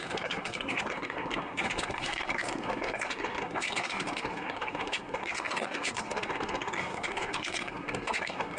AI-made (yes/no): yes